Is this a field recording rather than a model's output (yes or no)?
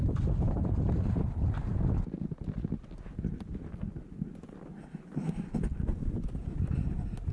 yes